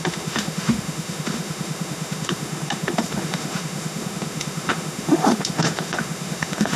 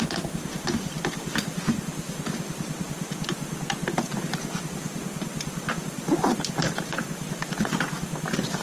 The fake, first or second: first